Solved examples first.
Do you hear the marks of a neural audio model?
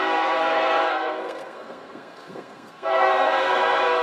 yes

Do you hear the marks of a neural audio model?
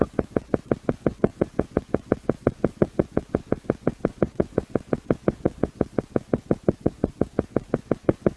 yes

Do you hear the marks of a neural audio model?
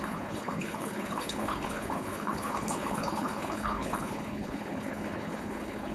yes